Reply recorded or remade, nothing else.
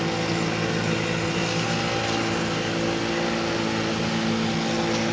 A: recorded